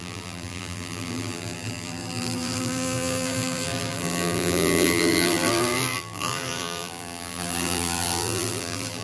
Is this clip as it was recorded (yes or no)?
no